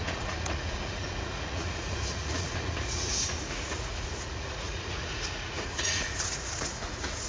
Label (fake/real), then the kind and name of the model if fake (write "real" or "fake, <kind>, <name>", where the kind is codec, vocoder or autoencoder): fake, vocoder, Vocos